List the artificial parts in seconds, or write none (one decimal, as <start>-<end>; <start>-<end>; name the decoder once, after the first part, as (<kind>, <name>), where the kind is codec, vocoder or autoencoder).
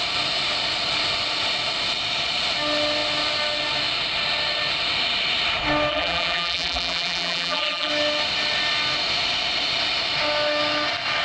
5.9-7.9 (vocoder, BigVGAN v2)